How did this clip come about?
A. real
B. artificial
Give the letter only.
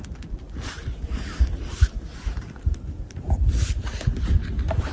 A